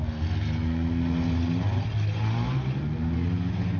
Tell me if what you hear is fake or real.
real